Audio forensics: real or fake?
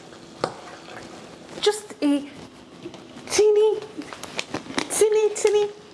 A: real